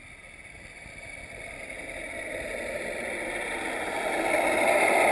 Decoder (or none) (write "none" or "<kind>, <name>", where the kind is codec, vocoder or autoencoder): none